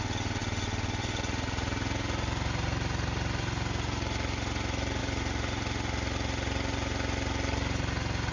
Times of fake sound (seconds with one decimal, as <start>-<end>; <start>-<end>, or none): none